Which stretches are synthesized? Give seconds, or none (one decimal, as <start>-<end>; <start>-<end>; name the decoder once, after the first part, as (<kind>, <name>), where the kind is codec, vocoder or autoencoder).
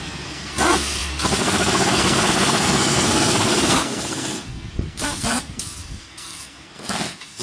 0.0-7.4 (codec, SNAC)